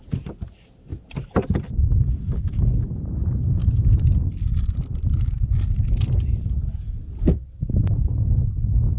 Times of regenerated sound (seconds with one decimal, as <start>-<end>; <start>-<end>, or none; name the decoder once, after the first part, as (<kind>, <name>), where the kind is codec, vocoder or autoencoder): none